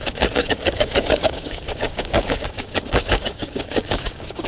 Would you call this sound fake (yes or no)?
yes